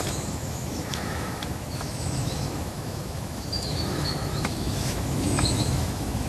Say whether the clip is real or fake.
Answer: fake